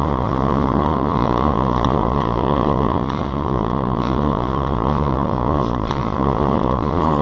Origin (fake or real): fake